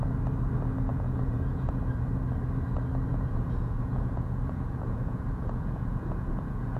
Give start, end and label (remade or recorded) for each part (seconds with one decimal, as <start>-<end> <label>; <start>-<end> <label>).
0.0-0.9 recorded; 0.9-1.8 remade; 1.8-3.1 recorded; 3.1-6.8 remade